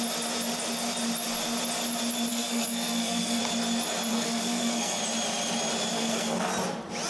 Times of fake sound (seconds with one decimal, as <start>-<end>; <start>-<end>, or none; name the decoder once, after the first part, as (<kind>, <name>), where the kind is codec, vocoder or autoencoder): 2.3-3.4 (codec, SNAC); 4.1-5.0; 5.9-6.5

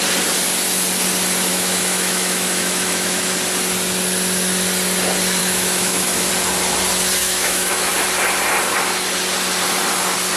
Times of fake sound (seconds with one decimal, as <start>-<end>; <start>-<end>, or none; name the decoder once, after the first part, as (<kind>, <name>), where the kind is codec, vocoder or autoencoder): 1.5-3.3 (autoencoder, DAC-VAE); 5.4-6.3; 7.2-7.9

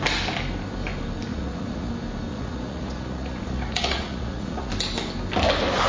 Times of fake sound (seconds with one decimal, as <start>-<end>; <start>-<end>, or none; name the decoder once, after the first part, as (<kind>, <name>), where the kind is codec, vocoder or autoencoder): 1.3-1.9 (vocoder, Vocos); 2.3-4.7

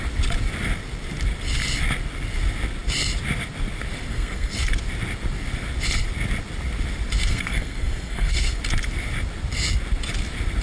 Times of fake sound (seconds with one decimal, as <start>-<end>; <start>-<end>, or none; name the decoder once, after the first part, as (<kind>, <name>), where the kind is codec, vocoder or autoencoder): 4.1-4.6 (codec, SNAC); 7.3-8.6

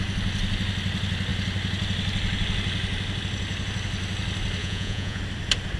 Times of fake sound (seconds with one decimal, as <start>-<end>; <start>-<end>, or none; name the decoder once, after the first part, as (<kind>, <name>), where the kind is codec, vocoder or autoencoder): 4.6-5.2 (vocoder, Vocos)

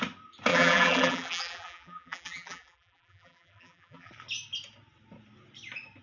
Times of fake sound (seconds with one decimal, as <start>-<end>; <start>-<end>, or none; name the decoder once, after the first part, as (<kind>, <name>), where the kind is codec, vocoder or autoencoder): 0.5-4.1 (vocoder, BigVGAN v2)

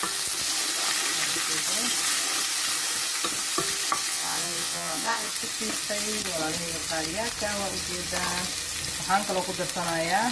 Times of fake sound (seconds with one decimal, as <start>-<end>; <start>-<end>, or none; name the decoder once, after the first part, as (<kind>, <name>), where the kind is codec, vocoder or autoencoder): 4.1-5.3 (vocoder, WaveNeXt)

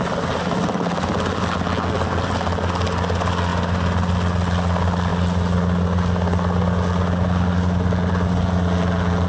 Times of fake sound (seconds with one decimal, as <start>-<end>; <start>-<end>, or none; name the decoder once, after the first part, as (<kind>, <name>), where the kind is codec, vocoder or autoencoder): none